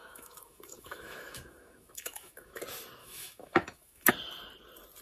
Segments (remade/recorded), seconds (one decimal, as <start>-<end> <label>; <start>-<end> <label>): 0.0-2.6 remade; 2.6-3.0 recorded; 3.0-4.1 remade; 4.1-5.0 recorded